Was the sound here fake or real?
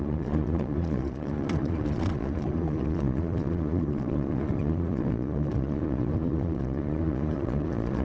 fake